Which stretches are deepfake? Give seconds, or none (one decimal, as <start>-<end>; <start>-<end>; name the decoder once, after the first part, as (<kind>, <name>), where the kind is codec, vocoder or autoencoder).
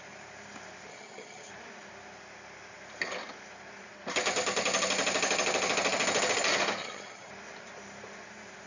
0.9-1.5 (vocoder, HiFi-GAN); 6.8-7.3